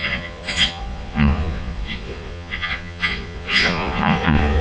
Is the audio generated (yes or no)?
yes